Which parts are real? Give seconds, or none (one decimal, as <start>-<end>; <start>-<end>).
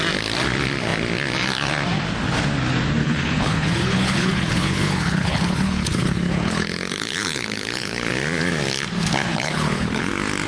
0.0-3.0; 8.1-9.3; 10.1-10.5